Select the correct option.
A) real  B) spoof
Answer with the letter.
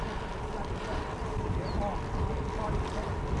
A